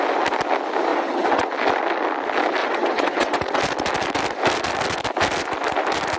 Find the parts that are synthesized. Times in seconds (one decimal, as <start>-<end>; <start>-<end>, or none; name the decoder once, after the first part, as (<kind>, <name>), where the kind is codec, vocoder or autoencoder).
0.9-1.5 (vocoder, WaveNeXt); 2.6-3.6